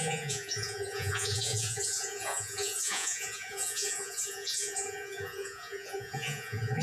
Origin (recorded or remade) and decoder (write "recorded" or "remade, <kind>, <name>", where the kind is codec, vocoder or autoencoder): remade, vocoder, Vocos